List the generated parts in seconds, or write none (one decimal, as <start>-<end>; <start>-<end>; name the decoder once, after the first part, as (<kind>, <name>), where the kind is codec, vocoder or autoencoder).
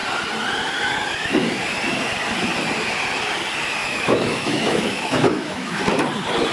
3.8-5.8 (autoencoder, DAC-VAE)